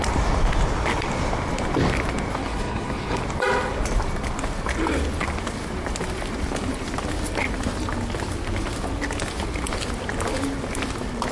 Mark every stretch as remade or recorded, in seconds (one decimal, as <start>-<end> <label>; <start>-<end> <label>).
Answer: 0.0-2.4 recorded; 2.4-3.2 remade; 3.2-11.3 recorded